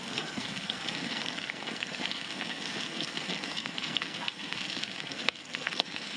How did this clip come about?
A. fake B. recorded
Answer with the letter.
A